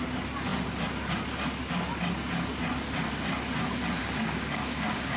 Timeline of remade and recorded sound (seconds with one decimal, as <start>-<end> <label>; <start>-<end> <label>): 0.0-4.0 recorded; 4.0-5.2 remade